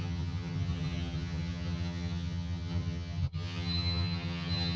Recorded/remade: remade